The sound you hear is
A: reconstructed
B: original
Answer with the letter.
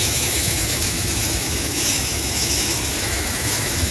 A